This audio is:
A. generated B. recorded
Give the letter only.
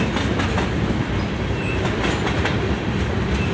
B